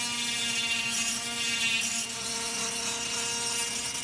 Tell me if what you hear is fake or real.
real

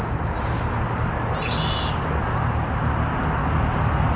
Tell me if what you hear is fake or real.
real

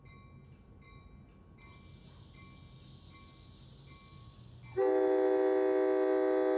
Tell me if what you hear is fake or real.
real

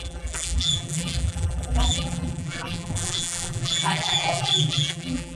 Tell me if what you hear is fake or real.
fake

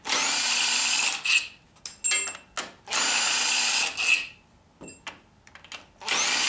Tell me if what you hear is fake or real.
real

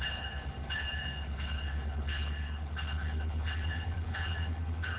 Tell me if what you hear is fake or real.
fake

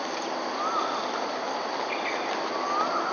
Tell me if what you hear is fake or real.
real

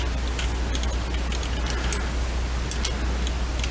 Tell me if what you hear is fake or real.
real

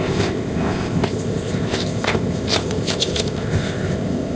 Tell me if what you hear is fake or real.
fake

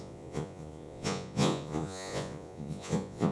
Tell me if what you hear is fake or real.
fake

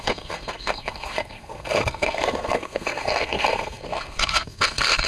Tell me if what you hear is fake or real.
fake